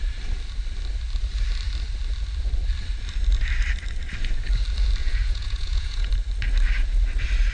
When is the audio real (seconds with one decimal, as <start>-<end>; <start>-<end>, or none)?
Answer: 0.0-5.0; 6.1-7.5